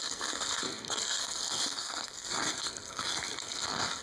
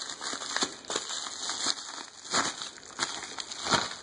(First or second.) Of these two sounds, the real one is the second